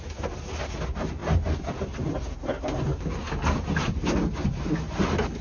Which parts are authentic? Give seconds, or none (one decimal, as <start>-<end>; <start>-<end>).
0.0-5.4